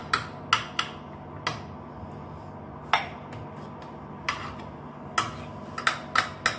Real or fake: real